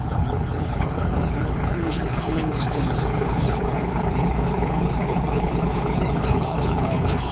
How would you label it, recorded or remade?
remade